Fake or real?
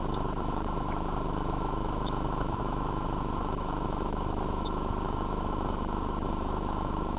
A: fake